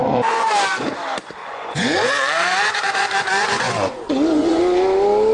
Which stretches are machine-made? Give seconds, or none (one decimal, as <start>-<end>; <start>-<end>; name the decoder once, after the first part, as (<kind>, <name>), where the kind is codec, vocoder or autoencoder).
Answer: 0.0-0.5 (vocoder, Vocos); 1.4-4.6